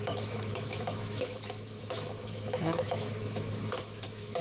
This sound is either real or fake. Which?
fake